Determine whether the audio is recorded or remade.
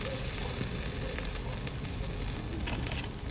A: recorded